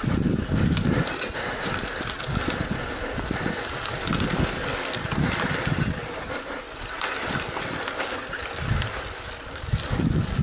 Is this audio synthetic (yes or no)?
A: no